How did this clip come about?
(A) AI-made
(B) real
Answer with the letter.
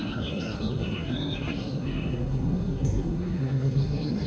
A